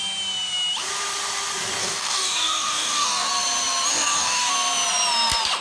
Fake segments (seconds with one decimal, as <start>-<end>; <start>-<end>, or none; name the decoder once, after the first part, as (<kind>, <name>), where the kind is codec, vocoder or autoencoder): 1.8-3.3 (codec, DAC); 3.9-4.5